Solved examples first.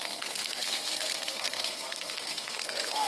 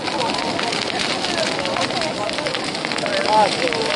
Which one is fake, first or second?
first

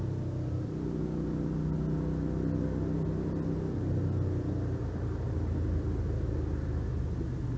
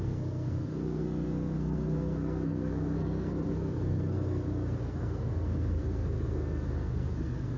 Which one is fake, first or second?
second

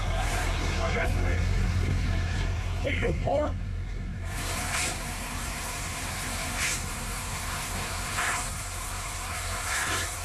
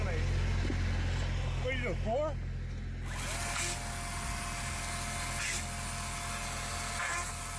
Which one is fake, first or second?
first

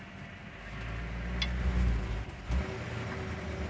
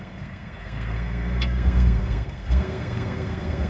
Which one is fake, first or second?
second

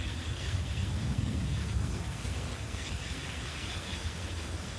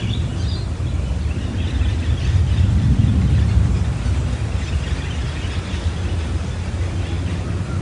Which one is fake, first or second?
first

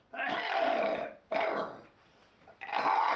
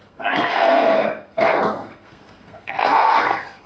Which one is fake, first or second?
second